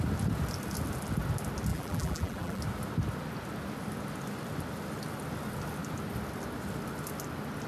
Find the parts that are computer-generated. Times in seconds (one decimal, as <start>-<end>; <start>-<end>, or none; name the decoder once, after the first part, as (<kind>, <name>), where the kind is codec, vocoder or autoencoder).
1.7-2.6 (vocoder, BigVGAN v2)

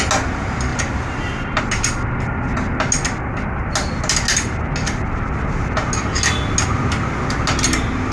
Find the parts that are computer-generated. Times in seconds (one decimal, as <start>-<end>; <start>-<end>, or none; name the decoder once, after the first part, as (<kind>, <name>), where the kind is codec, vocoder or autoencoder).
none

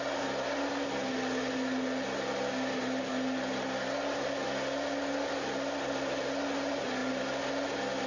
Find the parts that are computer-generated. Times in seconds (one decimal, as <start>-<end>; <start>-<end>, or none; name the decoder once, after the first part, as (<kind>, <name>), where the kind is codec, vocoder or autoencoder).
none